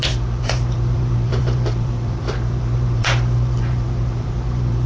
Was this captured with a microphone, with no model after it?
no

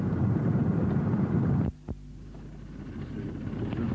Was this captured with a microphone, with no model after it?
yes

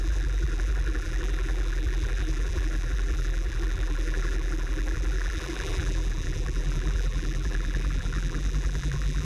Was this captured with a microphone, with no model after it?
no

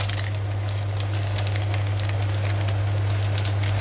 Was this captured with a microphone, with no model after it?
yes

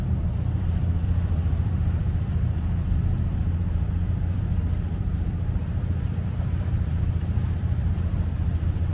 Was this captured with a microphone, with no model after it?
no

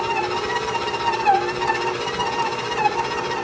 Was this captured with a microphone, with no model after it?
no